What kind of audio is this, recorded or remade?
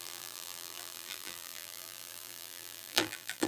remade